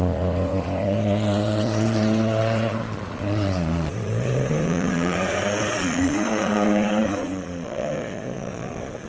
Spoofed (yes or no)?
yes